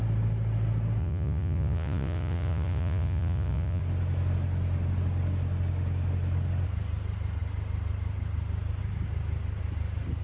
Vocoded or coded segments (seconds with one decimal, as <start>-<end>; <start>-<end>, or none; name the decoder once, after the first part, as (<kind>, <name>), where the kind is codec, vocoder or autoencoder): 1.0-3.8 (vocoder, Vocos)